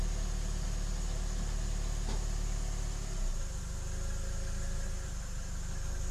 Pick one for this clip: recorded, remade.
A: recorded